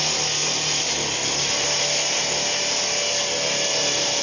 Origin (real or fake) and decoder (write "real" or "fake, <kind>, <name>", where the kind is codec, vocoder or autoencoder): real